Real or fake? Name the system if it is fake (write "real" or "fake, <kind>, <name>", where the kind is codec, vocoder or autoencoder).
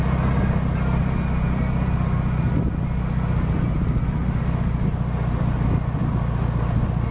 real